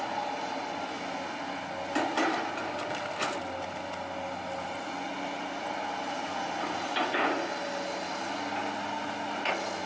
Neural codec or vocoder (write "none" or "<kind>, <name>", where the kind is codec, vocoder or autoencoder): none